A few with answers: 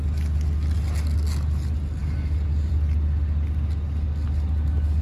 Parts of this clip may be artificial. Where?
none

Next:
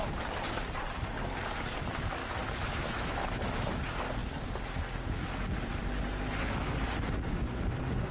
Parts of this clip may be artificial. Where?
2.2-3.8 (autoencoder, DAC-VAE)

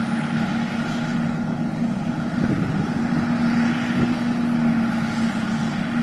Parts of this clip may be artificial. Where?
none

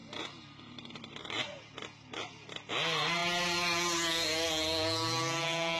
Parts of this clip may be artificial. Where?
none

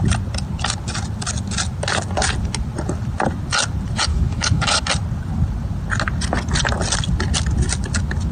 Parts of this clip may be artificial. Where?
4.1-4.8 (codec, DAC)

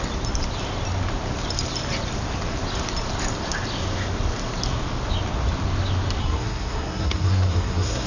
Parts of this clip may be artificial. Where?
6.2-8.1 (codec, SNAC)